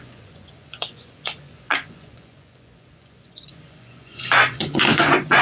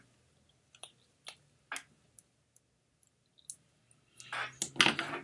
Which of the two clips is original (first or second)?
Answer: second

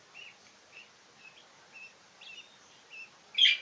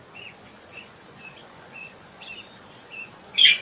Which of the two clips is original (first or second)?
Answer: first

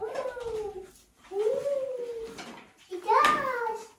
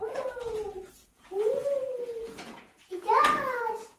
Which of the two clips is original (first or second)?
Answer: first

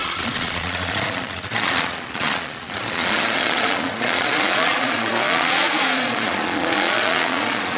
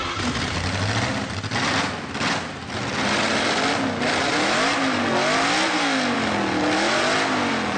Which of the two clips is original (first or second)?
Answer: second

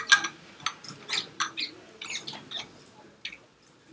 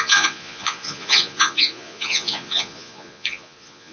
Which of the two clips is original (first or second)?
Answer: first